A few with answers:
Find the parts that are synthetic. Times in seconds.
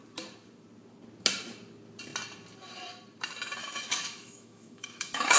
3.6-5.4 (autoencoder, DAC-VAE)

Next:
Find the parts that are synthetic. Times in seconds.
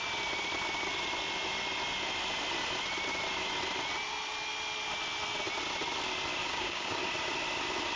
6.4-7.0 (codec, DAC)